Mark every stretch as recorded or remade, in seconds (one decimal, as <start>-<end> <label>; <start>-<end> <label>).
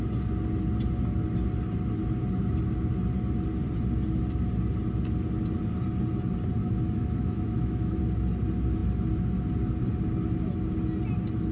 0.0-6.6 recorded; 6.6-8.0 remade; 8.0-11.5 recorded